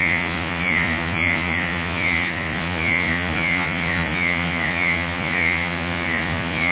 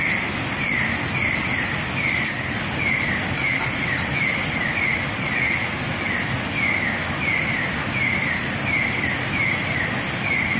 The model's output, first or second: first